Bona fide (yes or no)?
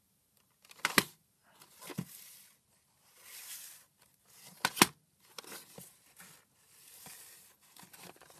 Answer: yes